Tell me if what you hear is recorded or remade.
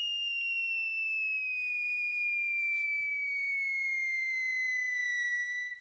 recorded